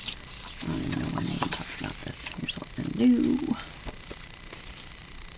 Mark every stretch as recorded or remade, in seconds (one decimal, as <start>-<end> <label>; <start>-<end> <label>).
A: 0.0-2.0 remade; 2.0-4.9 recorded; 4.9-5.4 remade